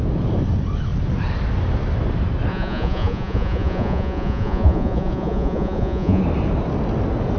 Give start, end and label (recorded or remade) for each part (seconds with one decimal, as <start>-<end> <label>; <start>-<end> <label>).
0.0-2.5 recorded; 2.5-6.2 remade; 6.2-7.4 recorded